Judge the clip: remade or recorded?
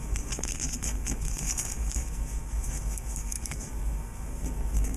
remade